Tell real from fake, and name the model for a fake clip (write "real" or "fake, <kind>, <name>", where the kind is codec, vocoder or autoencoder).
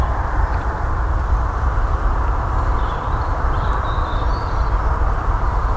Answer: fake, vocoder, BigVGAN v2